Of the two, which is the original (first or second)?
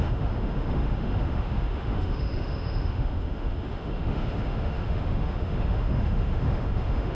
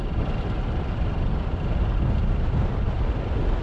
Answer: second